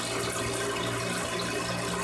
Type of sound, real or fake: real